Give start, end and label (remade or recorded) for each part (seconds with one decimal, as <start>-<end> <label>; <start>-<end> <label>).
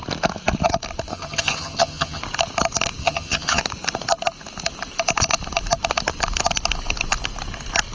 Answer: 0.0-1.1 recorded; 1.1-2.2 remade; 2.2-3.0 recorded; 3.0-3.6 remade; 3.6-7.9 recorded